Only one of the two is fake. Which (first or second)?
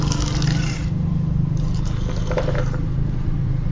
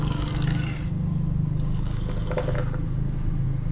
first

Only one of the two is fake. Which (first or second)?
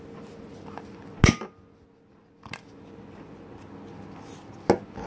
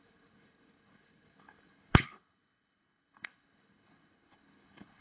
second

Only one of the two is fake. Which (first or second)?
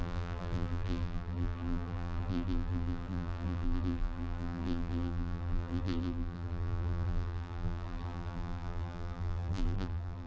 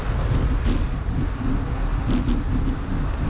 first